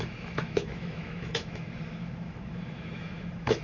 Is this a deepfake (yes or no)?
yes